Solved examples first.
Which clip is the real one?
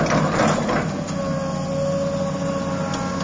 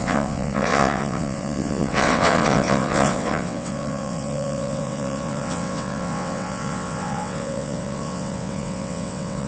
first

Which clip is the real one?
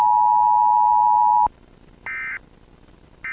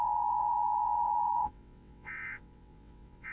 first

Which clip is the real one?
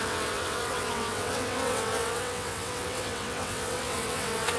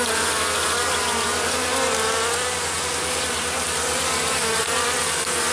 second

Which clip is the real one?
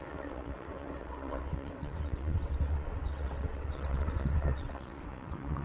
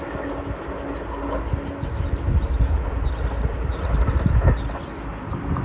second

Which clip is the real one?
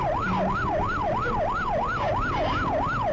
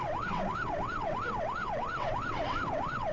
first